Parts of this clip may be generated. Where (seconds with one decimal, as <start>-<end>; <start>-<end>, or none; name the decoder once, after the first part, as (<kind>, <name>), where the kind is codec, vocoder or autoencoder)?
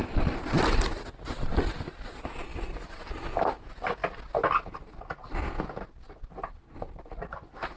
none